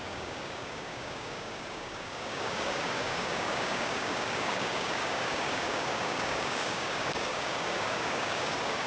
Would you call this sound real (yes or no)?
no